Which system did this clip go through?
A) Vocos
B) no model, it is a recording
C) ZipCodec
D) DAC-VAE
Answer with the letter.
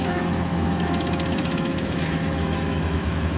D